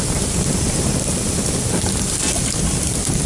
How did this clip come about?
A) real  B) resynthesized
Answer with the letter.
A